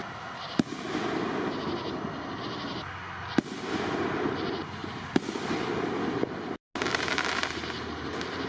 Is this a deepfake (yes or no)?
no